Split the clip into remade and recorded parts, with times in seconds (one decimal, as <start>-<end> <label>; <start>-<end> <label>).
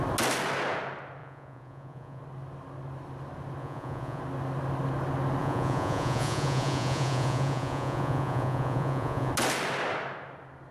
0.0-1.2 recorded; 1.2-2.2 remade; 2.2-3.6 recorded; 3.6-4.2 remade; 4.2-5.4 recorded; 5.4-9.3 remade; 9.3-10.7 recorded